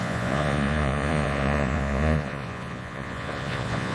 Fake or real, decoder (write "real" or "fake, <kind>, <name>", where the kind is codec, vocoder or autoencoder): fake, vocoder, Vocos